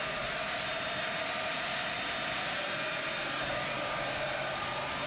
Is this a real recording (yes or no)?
yes